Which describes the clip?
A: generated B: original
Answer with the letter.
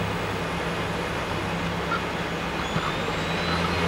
B